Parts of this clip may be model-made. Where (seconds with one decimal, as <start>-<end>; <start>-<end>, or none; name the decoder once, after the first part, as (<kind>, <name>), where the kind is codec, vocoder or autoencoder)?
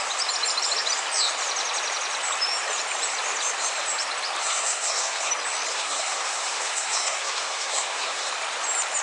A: 4.4-5.3 (codec, SNAC); 5.7-8.3